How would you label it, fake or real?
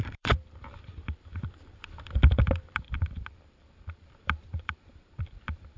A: fake